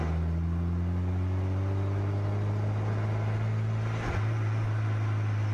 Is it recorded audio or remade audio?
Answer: recorded